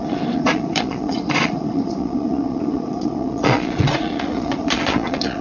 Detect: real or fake fake